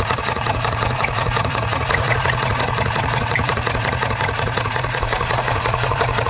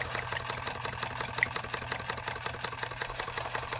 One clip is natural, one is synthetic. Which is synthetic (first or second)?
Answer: first